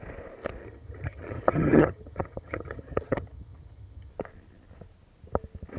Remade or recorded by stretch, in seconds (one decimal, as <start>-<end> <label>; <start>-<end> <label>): 0.0-0.6 recorded; 0.6-4.1 remade; 4.1-5.8 recorded